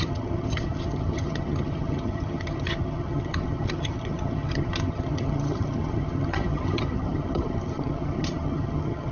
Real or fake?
fake